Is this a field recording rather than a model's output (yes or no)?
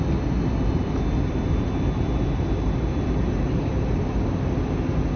yes